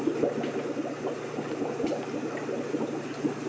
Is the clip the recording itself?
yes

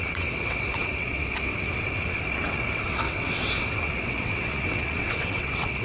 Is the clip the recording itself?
no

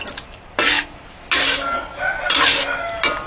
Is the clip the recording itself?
yes